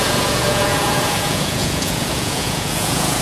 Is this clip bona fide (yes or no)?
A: no